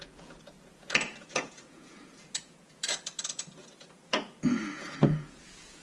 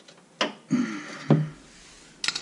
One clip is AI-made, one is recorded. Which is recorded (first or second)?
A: second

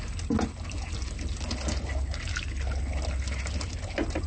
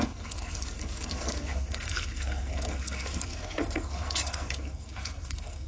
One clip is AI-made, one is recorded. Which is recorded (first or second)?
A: first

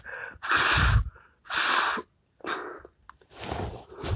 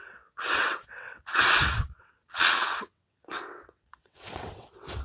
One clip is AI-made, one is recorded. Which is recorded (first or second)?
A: first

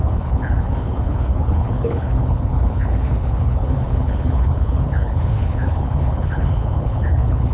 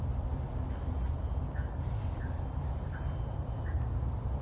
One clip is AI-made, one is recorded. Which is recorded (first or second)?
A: second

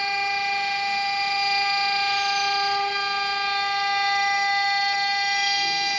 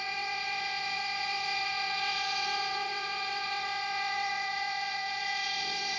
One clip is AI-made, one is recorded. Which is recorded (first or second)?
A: first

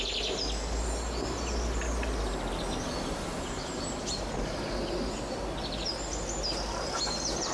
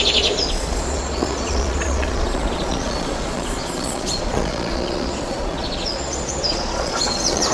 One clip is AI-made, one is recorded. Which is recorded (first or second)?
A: first